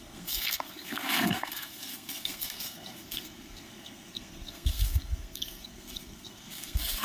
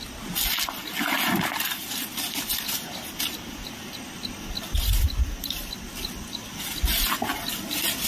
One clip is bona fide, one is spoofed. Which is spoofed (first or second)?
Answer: first